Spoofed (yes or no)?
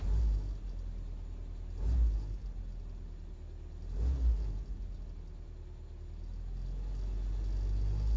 no